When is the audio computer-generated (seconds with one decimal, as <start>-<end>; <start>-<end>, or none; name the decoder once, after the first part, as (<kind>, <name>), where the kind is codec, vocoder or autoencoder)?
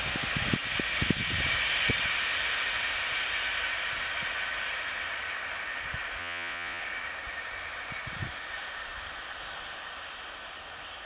6.2-6.8 (vocoder, Vocos)